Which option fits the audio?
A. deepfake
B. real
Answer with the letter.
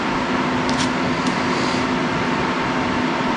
B